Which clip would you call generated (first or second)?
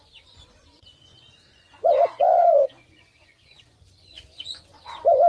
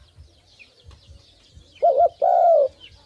first